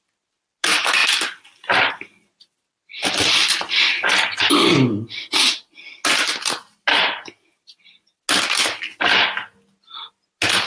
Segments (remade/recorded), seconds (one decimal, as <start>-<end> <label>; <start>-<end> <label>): 0.0-10.7 recorded